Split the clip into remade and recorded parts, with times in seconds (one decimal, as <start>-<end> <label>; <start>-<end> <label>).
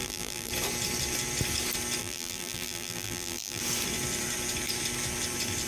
0.0-0.5 remade; 0.5-2.0 recorded; 2.0-3.6 remade; 3.6-5.7 recorded